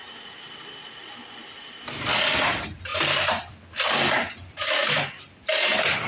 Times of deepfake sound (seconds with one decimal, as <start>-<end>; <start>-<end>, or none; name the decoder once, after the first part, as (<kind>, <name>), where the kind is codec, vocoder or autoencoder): 2.9-3.6 (vocoder, BigVGAN v2); 4.8-5.5